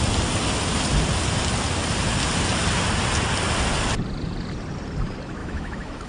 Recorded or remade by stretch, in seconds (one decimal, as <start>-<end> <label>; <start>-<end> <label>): 0.0-5.4 recorded; 5.4-6.1 remade